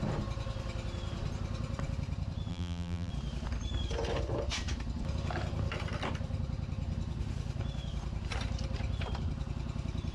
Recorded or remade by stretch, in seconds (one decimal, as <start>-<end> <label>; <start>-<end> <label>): 0.0-2.5 recorded; 2.5-3.1 remade; 3.1-10.1 recorded